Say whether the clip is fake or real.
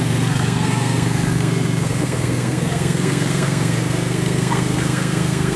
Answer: fake